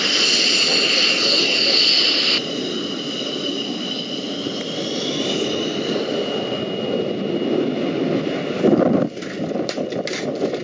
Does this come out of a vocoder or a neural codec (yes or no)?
no